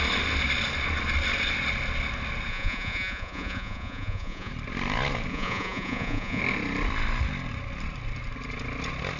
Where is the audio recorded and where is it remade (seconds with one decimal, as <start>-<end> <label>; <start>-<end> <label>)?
0.0-2.5 recorded; 2.5-4.5 remade; 4.5-5.3 recorded; 5.3-6.4 remade; 6.4-9.2 recorded